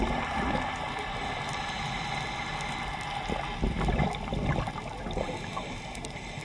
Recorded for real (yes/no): yes